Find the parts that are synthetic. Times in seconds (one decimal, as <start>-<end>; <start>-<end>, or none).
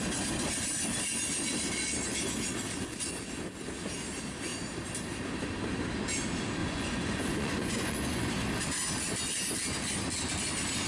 6.6-8.3